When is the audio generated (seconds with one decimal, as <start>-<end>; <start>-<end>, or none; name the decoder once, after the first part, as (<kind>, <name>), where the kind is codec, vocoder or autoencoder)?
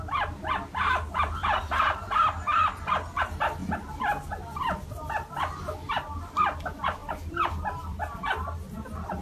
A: 7.0-8.0 (vocoder, BigVGAN v2)